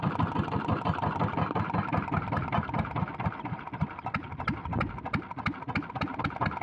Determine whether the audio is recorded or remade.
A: recorded